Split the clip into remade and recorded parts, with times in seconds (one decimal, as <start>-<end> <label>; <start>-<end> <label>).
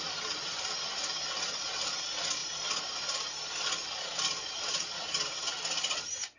0.0-6.4 recorded